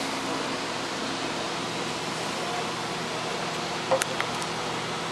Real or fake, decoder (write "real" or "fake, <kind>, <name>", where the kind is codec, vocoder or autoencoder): real